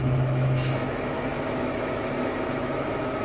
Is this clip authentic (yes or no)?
no